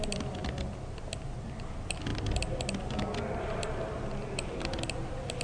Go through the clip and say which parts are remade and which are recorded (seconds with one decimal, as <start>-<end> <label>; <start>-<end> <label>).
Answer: 0.0-5.4 recorded